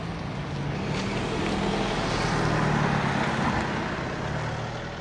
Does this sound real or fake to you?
real